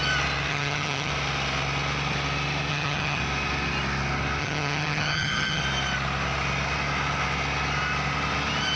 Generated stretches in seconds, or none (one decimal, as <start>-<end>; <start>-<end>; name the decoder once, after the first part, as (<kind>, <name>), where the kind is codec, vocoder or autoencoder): 0.5-1.1 (vocoder, HiFi-GAN); 2.7-3.2; 4.4-5.6